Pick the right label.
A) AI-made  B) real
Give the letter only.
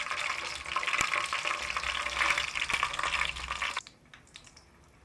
B